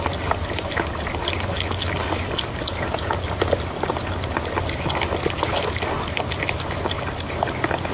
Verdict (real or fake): real